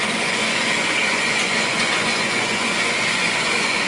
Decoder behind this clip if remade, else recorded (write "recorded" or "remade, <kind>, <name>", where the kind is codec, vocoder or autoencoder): remade, vocoder, Vocos